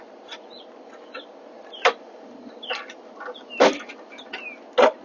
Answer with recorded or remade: recorded